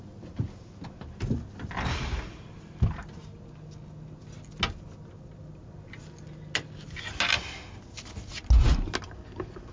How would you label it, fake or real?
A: real